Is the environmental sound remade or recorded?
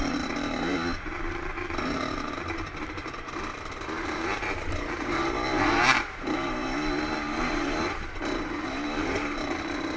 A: remade